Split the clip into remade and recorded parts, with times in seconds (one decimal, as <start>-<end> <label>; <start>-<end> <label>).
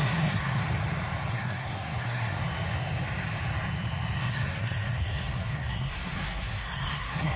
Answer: 0.0-0.6 remade; 0.6-1.3 recorded; 1.3-2.4 remade; 2.4-4.2 recorded; 4.2-7.4 remade